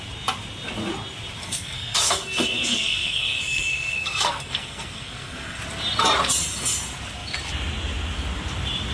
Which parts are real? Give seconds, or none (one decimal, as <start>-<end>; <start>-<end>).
0.0-1.4; 5.6-8.9